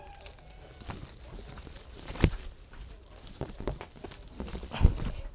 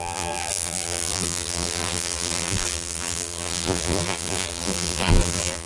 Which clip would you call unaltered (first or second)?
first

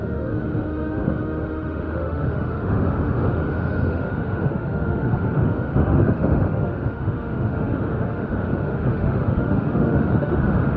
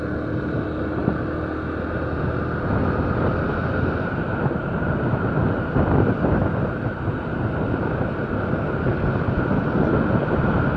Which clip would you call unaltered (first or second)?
second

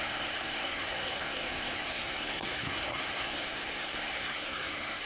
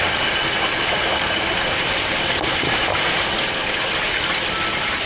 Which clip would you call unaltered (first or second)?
second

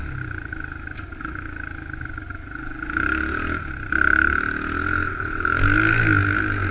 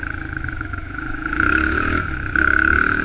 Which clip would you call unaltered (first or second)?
first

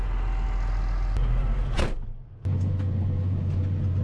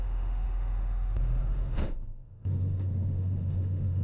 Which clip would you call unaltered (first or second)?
first